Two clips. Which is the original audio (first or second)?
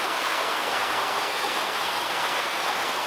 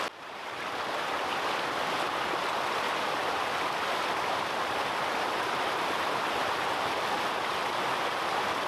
second